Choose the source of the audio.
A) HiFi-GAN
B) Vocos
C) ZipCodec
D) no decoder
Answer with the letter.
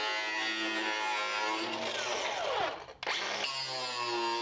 D